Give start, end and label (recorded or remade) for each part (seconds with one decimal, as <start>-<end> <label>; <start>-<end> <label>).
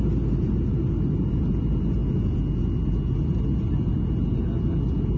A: 0.0-5.2 recorded